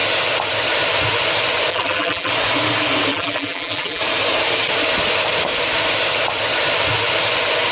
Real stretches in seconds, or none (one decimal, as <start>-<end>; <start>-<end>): 0.0-1.7; 2.3-3.1; 4.0-7.7